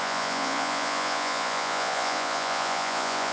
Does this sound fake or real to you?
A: fake